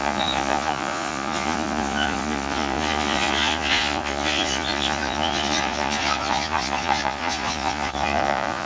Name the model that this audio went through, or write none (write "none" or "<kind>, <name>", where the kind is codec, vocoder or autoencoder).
vocoder, Vocos